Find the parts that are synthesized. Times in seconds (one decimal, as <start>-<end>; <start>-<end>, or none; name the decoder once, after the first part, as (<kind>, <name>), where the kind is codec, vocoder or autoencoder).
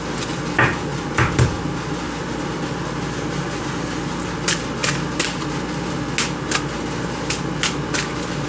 none